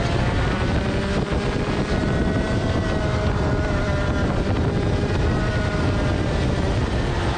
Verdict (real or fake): real